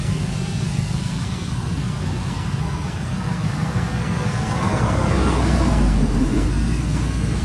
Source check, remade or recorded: remade